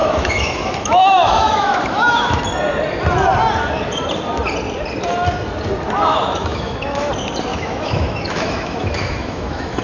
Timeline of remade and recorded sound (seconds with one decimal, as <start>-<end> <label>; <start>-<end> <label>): 0.0-2.4 remade; 2.4-6.1 recorded; 6.1-7.1 remade; 7.1-7.5 recorded; 7.5-9.8 remade